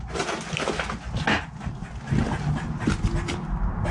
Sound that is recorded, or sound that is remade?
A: recorded